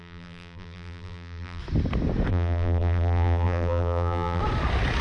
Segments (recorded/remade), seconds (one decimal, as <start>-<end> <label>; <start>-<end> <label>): 0.0-1.6 remade; 1.6-2.3 recorded; 2.3-4.4 remade; 4.4-5.0 recorded